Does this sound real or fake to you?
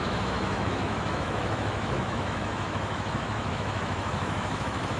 fake